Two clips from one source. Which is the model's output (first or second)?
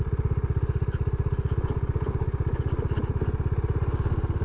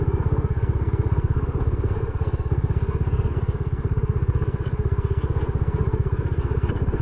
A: second